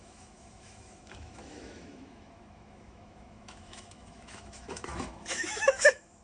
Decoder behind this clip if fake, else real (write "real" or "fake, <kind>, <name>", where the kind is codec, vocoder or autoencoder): fake, autoencoder, DAC-VAE